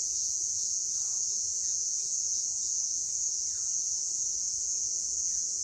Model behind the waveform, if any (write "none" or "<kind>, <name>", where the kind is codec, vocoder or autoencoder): vocoder, Vocos